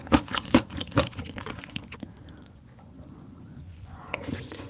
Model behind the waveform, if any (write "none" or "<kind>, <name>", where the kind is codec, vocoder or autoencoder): vocoder, Vocos